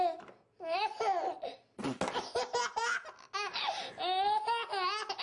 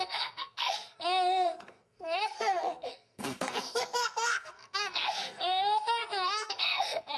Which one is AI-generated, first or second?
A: second